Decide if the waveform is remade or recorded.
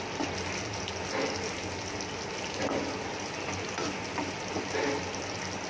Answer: recorded